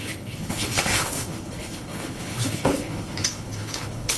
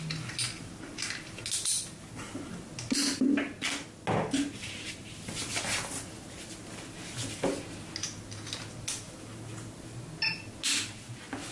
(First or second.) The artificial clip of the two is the first